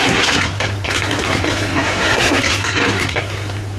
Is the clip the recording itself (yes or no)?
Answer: no